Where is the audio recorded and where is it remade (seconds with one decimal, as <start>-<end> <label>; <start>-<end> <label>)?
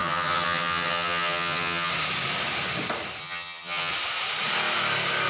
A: 0.0-1.9 remade; 1.9-3.2 recorded; 3.2-3.9 remade; 3.9-5.3 recorded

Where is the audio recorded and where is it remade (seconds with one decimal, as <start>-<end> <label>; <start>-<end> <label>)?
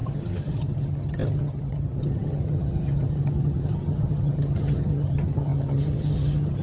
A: 0.0-6.6 remade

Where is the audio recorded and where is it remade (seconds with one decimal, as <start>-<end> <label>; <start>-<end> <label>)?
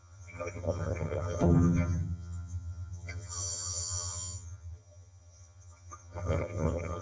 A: 0.0-7.0 remade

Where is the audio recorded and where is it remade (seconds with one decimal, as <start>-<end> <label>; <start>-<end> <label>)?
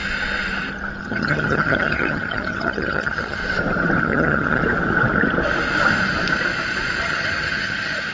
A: 0.0-1.0 recorded; 1.0-3.4 remade; 3.4-4.0 recorded; 4.0-4.6 remade; 4.6-7.0 recorded; 7.0-8.1 remade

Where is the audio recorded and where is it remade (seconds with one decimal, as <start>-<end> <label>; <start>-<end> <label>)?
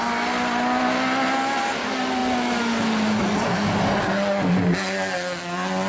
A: 0.0-5.9 recorded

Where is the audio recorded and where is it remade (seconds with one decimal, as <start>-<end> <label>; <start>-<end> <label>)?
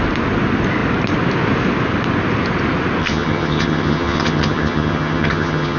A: 0.0-3.0 recorded; 3.0-5.8 remade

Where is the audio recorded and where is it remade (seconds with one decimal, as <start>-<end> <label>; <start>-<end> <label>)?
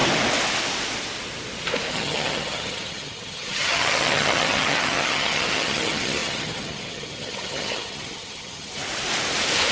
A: 0.0-1.9 recorded; 1.9-8.8 remade; 8.8-9.7 recorded